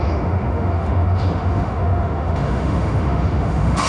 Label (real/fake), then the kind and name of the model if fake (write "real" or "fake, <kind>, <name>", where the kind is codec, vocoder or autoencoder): fake, autoencoder, DAC-VAE